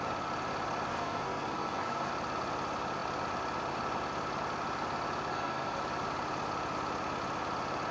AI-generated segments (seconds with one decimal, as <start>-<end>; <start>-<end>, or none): 0.9-2.1; 5.3-5.8